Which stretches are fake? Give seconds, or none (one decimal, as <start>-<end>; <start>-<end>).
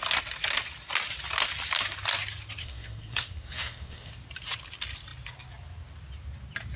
2.6-4.1